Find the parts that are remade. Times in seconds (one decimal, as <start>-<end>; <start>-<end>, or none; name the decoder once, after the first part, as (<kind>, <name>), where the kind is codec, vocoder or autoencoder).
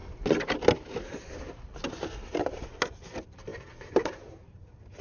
2.9-5.0 (vocoder, BigVGAN v2)